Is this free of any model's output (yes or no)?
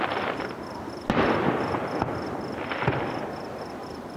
yes